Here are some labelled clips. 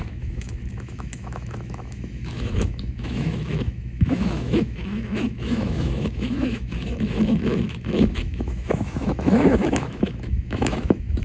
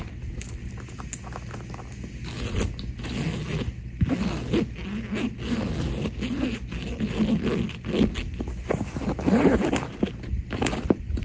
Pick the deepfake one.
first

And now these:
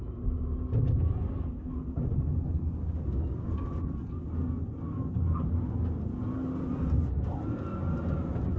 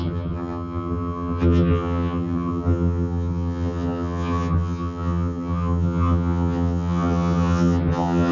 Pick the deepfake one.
second